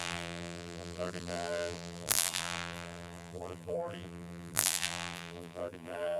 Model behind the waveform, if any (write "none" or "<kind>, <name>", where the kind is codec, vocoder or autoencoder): vocoder, BigVGAN v2